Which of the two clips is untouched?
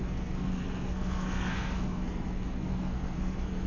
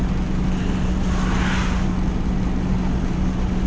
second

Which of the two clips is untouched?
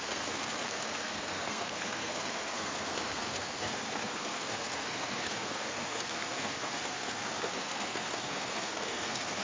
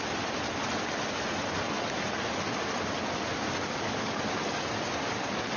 second